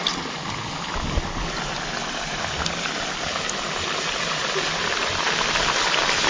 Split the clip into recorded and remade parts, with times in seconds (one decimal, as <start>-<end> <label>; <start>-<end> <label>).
0.0-2.0 recorded; 2.0-2.6 remade; 2.6-6.3 recorded